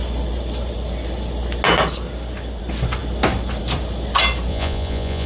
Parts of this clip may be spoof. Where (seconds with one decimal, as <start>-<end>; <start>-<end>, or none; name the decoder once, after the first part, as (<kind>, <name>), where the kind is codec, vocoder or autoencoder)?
4.5-5.3 (vocoder, Vocos)